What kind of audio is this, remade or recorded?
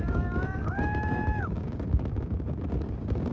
remade